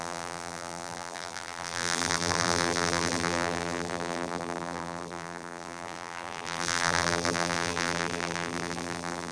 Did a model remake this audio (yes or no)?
yes